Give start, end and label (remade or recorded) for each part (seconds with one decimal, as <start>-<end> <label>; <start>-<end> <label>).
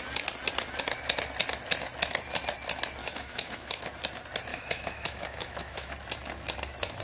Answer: 0.0-3.0 recorded; 3.0-3.8 remade; 3.8-4.5 recorded; 4.5-5.9 remade; 5.9-7.0 recorded